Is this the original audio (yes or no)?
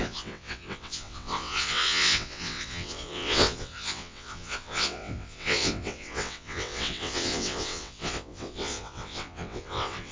no